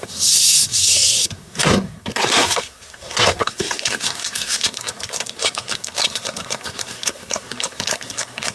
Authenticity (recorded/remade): remade